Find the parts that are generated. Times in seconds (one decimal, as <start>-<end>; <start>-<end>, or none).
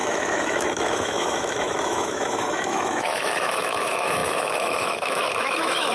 0.0-5.9